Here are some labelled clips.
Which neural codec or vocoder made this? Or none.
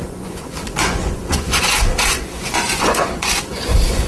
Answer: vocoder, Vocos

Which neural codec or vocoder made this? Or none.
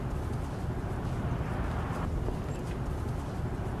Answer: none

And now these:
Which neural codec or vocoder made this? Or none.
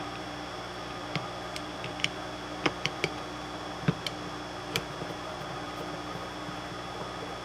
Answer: vocoder, BigVGAN v2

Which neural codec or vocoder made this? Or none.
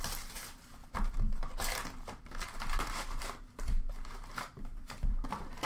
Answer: vocoder, BigVGAN v2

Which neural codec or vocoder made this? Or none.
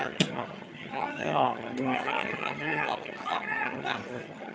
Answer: vocoder, HiFi-GAN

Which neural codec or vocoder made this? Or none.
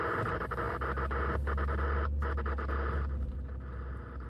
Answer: none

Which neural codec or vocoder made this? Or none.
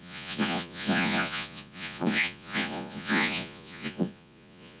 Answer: vocoder, Vocos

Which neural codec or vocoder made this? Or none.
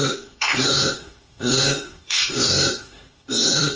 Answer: codec, SNAC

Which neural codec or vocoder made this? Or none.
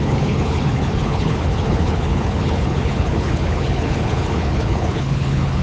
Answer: codec, HILCodec